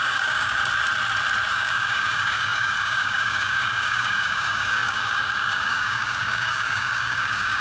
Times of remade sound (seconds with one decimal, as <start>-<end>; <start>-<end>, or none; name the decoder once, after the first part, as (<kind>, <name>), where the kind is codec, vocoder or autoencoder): 0.0-0.6 (codec, DAC); 1.5-7.6